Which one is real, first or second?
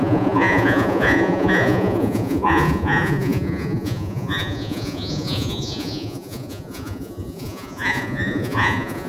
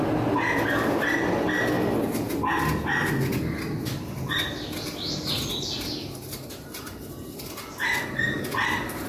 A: second